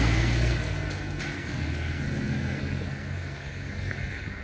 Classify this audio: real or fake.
fake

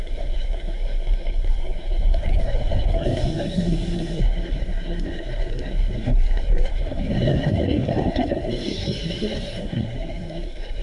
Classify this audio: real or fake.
fake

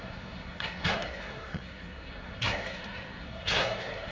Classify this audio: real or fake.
fake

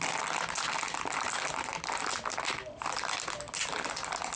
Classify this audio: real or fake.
real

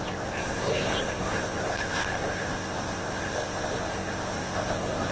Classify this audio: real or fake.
fake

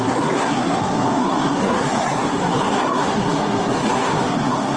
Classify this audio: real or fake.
fake